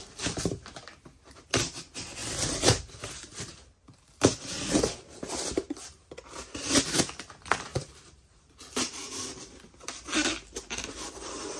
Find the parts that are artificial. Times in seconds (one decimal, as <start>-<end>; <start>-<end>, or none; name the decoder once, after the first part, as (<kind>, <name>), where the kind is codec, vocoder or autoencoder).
7.7-8.5 (vocoder, BigVGAN v2)